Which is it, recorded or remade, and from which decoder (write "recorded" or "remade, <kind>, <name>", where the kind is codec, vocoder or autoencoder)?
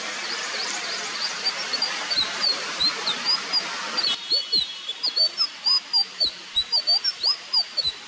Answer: recorded